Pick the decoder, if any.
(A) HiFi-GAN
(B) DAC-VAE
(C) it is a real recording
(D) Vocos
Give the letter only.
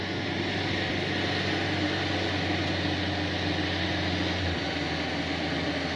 C